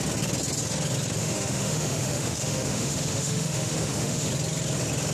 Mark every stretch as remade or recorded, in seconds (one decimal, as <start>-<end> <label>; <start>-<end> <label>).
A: 0.0-1.2 recorded; 1.2-4.3 remade; 4.3-5.1 recorded